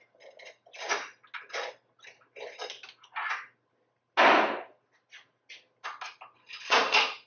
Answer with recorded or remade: recorded